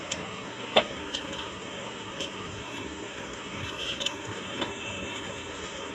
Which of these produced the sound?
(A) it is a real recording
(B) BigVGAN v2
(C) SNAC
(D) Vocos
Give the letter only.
C